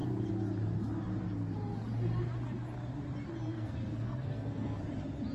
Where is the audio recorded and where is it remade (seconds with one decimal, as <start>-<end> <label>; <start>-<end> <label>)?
0.0-3.5 recorded; 3.5-4.8 remade; 4.8-5.3 recorded